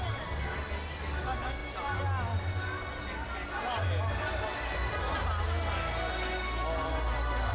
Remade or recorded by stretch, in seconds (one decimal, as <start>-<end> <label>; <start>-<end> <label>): 0.0-7.5 recorded